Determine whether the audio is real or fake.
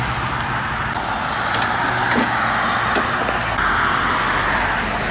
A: real